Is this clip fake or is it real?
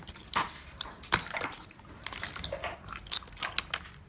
real